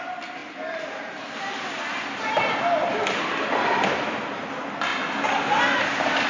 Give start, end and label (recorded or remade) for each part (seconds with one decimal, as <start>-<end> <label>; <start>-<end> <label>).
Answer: 0.0-6.3 recorded